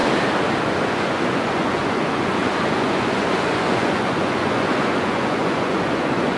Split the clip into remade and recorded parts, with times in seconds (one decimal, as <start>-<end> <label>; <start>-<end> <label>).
0.0-0.6 recorded; 0.6-6.4 remade